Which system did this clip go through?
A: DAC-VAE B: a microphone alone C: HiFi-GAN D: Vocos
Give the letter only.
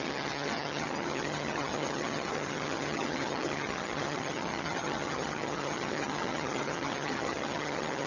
C